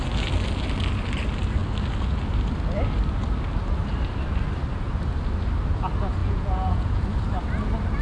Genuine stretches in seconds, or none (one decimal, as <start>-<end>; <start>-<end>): 0.0-6.2; 7.0-8.0